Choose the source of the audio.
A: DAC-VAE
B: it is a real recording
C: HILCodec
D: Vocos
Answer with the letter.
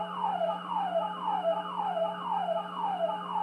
B